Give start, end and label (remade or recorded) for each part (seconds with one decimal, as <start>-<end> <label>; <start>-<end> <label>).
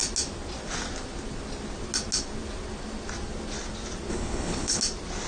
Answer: 0.0-4.1 recorded; 4.1-4.8 remade; 4.8-5.3 recorded